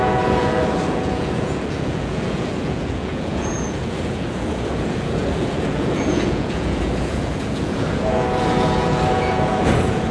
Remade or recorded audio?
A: remade